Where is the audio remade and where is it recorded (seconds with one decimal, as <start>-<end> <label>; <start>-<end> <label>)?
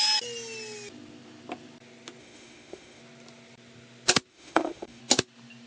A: 0.0-2.2 recorded; 2.2-3.0 remade; 3.0-4.3 recorded; 4.3-5.0 remade; 5.0-5.7 recorded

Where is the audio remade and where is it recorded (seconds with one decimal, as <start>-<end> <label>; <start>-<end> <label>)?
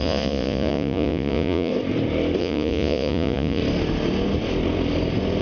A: 0.0-1.7 remade; 1.7-2.4 recorded; 2.4-3.6 remade; 3.6-5.4 recorded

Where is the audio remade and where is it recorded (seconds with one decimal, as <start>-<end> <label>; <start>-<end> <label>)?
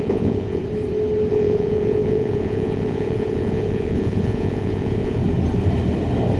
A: 0.0-0.6 remade; 0.6-1.3 recorded; 1.3-5.2 remade; 5.2-6.4 recorded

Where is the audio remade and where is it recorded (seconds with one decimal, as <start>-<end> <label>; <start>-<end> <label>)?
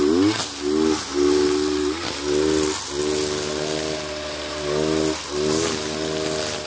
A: 0.0-6.7 recorded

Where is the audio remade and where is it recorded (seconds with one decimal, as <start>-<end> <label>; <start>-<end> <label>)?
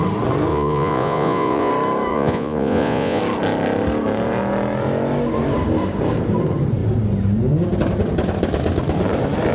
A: 0.0-0.5 recorded; 0.5-1.7 remade; 1.7-2.1 recorded; 2.1-3.2 remade; 3.2-9.5 recorded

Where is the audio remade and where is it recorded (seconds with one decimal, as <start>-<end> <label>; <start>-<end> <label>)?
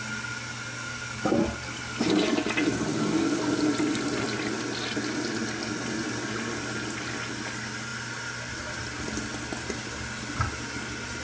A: 0.0-2.9 recorded; 2.9-3.6 remade; 3.6-11.2 recorded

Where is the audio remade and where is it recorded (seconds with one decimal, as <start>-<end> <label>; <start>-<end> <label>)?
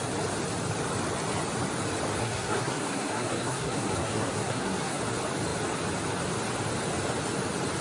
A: 0.0-2.2 recorded; 2.2-5.0 remade; 5.0-7.8 recorded